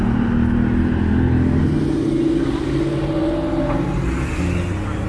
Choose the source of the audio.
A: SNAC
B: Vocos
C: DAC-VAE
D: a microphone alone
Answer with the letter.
D